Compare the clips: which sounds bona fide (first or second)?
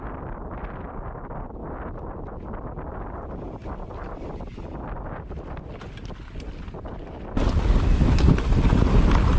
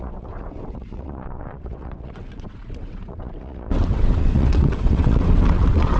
first